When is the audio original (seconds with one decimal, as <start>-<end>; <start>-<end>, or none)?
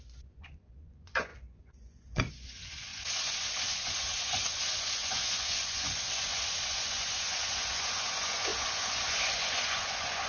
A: none